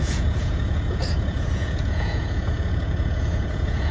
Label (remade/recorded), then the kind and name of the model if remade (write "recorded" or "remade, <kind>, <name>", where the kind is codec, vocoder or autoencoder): remade, vocoder, Vocos